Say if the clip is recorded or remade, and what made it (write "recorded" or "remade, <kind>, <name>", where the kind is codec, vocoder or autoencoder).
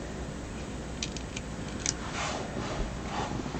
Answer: recorded